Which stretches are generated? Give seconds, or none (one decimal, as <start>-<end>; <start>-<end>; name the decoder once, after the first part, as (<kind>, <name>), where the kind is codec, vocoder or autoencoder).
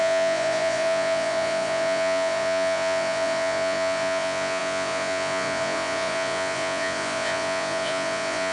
0.0-8.5 (vocoder, Vocos)